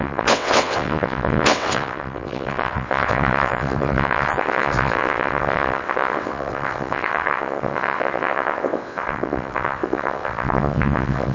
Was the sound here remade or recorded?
remade